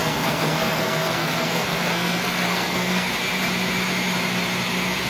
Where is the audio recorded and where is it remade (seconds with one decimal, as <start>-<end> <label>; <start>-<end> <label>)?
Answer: 0.0-3.1 remade; 3.1-5.1 recorded